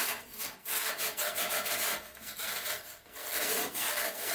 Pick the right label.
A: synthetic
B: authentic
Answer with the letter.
A